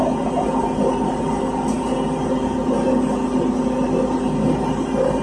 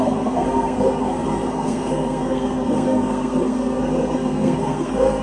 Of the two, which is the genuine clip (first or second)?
first